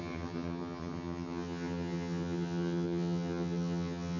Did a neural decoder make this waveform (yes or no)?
yes